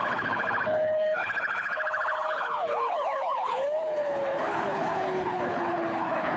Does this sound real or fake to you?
fake